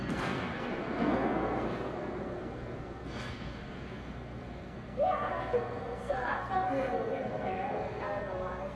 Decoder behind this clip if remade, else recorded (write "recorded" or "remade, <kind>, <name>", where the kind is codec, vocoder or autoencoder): remade, codec, SNAC